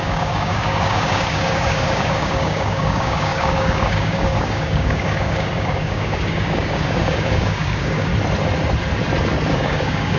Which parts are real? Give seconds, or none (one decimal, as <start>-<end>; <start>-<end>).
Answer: 8.1-9.5